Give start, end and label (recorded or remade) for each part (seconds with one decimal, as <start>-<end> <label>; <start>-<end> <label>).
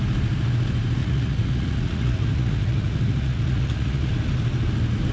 0.0-1.0 recorded; 1.0-4.1 remade; 4.1-5.1 recorded